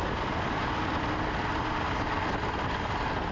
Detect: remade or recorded recorded